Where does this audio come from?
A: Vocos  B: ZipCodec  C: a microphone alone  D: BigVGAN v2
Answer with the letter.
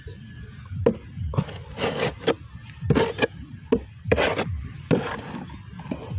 C